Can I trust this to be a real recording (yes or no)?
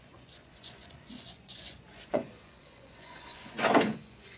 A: no